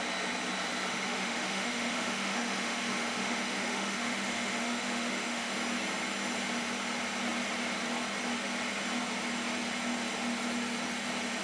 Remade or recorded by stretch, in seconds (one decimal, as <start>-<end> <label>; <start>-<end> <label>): 0.0-0.9 recorded; 0.9-5.5 remade; 5.5-11.4 recorded